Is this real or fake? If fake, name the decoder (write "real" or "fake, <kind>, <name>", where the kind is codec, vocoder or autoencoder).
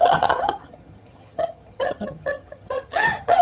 fake, vocoder, HiFi-GAN